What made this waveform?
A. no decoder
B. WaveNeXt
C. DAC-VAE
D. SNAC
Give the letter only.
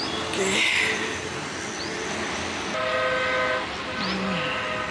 A